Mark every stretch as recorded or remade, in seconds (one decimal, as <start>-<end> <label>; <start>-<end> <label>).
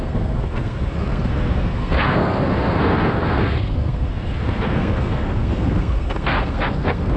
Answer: 0.0-7.2 remade